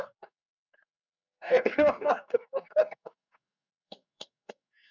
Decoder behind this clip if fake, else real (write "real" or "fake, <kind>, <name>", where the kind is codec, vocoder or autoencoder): fake, codec, DAC